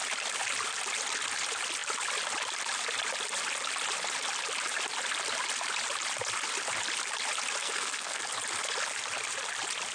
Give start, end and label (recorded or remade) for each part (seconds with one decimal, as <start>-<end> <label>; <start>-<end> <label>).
0.0-7.6 recorded; 7.6-8.2 remade; 8.2-9.9 recorded